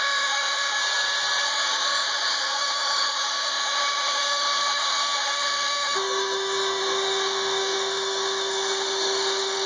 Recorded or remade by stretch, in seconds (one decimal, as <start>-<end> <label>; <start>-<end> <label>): 0.0-0.8 remade; 0.8-1.4 recorded; 1.4-9.7 remade